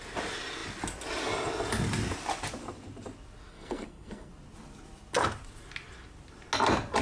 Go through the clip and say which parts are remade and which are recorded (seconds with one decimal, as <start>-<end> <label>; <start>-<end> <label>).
0.0-3.5 recorded; 3.5-4.3 remade; 4.3-7.0 recorded

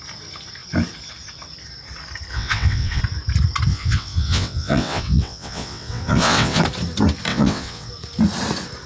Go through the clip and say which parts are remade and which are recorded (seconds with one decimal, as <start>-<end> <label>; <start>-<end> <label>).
0.0-2.3 recorded; 2.3-3.0 remade; 3.0-3.7 recorded; 3.7-6.6 remade; 6.6-7.3 recorded; 7.3-7.9 remade; 7.9-8.9 recorded

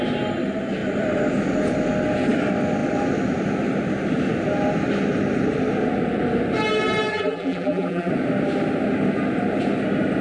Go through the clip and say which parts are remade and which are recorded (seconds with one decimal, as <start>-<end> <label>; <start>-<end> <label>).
0.0-7.1 recorded; 7.1-8.1 remade; 8.1-10.2 recorded